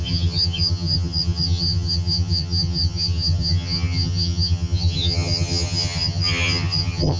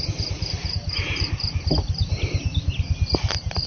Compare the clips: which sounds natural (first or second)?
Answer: second